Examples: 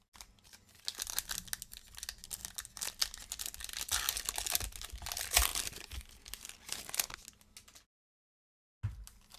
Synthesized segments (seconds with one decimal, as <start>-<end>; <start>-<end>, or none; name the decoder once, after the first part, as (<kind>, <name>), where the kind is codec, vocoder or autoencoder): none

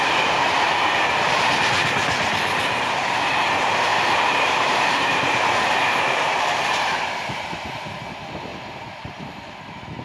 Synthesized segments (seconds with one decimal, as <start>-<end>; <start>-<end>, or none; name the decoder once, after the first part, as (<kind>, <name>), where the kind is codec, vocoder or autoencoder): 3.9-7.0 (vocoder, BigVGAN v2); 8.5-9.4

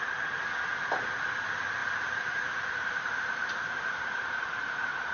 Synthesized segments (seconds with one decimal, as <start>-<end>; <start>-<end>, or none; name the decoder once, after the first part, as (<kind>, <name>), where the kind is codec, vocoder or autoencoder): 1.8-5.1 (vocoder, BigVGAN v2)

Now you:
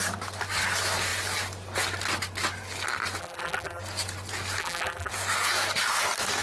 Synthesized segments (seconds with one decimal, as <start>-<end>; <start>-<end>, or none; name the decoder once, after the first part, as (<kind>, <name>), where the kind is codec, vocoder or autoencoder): 3.2-3.8 (vocoder, BigVGAN v2); 4.6-5.1